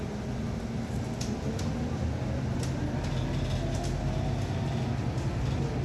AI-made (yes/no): no